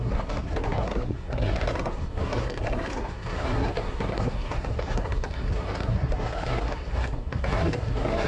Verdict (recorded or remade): remade